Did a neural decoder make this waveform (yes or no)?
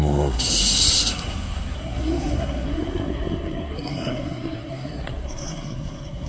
yes